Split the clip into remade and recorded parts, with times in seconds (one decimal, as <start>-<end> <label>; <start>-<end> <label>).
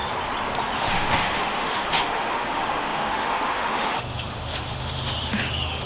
0.0-0.8 recorded; 0.8-5.9 remade